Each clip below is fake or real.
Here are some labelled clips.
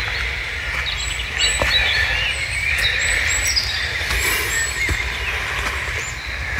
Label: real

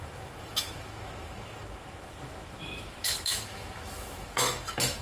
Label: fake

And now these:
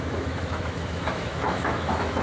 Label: fake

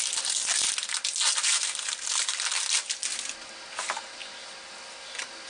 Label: real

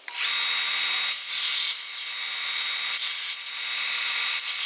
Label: real